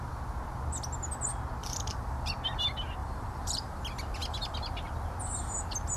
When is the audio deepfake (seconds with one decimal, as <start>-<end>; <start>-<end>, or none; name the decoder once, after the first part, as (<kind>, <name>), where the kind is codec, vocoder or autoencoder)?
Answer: 1.6-2.3 (vocoder, BigVGAN v2); 3.0-3.8

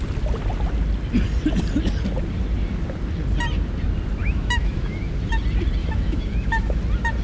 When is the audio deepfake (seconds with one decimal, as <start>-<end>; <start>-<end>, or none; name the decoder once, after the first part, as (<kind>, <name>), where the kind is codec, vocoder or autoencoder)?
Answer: 4.2-5.1 (autoencoder, DAC-VAE); 5.8-6.8

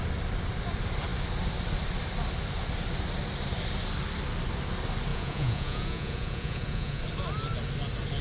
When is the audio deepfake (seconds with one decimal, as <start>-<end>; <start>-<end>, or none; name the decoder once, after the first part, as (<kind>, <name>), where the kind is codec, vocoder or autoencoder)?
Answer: 5.1-7.0 (vocoder, Vocos)

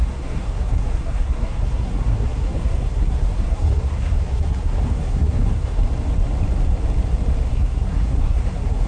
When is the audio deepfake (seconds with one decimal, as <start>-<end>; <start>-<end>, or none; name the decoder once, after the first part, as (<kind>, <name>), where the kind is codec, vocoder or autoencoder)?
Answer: 0.0-5.8 (codec, SNAC); 7.5-8.9

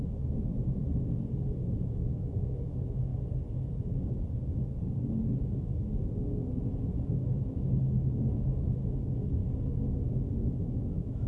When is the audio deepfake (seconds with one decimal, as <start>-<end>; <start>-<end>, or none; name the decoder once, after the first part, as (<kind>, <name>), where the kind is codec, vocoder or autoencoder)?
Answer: 0.0-0.8 (autoencoder, DAC-VAE); 1.8-3.1; 7.1-9.4; 10.6-11.3

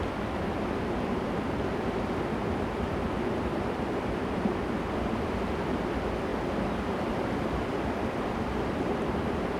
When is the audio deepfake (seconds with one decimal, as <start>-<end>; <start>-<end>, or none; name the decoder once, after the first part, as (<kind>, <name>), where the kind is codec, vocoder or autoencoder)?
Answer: none

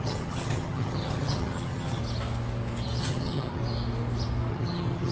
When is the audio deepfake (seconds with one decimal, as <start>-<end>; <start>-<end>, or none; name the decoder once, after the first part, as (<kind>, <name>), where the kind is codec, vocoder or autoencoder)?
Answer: 0.0-2.0 (vocoder, HiFi-GAN); 3.0-3.6; 4.5-5.1

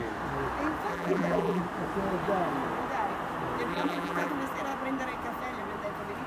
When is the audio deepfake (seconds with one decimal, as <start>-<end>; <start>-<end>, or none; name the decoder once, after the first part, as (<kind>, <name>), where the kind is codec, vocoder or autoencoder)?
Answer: 0.9-1.6 (vocoder, BigVGAN v2); 3.7-4.3